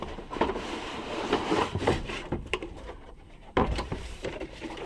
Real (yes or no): no